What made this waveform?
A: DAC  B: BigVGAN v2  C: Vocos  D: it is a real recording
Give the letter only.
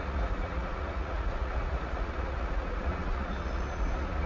C